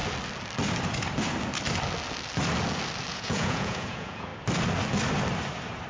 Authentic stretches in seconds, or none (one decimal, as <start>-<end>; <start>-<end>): 0.0-3.1; 4.3-5.9